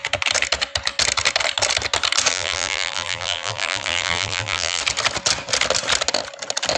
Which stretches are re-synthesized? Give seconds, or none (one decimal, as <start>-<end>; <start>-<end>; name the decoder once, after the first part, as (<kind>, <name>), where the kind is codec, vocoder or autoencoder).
2.3-4.8 (vocoder, BigVGAN v2)